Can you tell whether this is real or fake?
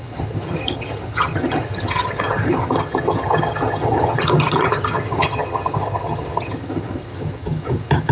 fake